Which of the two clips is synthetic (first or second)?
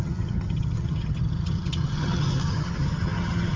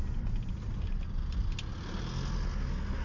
first